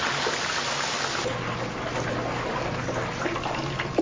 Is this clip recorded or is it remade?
recorded